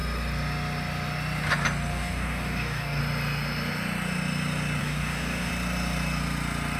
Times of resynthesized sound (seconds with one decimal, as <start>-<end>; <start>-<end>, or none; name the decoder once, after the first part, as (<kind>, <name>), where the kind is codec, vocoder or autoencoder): 1.9-3.0 (codec, DAC); 4.8-5.5